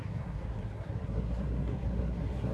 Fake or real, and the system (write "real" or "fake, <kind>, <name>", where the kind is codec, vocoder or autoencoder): fake, codec, SNAC